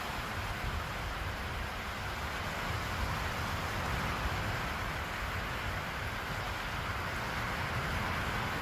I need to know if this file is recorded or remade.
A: recorded